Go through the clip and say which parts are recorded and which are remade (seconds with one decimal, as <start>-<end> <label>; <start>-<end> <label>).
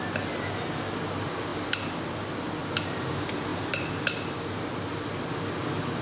0.0-6.0 recorded